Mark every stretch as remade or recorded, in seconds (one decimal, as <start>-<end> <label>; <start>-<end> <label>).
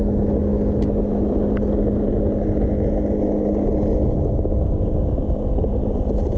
0.0-6.4 recorded